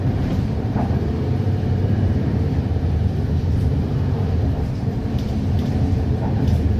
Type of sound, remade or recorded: remade